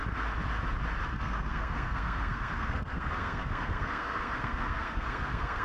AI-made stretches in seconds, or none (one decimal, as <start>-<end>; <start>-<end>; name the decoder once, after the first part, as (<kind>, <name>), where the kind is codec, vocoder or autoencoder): 1.1-5.6 (codec, SNAC)